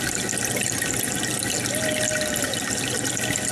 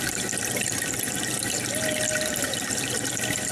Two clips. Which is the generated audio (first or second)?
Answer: second